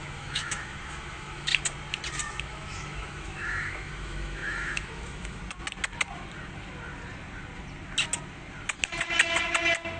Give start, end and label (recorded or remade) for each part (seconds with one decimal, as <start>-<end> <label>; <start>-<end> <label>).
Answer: 0.0-1.5 remade; 1.5-2.4 recorded; 2.4-5.4 remade; 5.4-10.0 recorded